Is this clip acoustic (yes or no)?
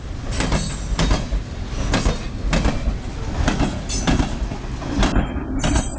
yes